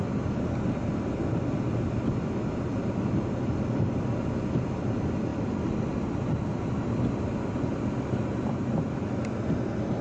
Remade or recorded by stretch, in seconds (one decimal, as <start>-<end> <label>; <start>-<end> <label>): 0.0-10.0 recorded